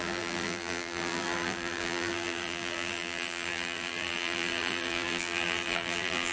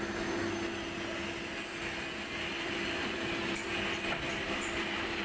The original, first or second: second